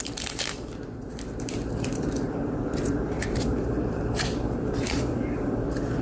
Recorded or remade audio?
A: remade